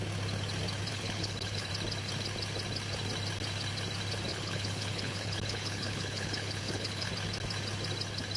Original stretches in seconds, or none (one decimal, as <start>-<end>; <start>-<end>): 0.0-0.9; 1.7-4.3; 7.1-8.4